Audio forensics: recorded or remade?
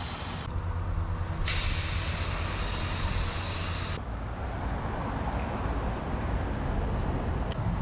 recorded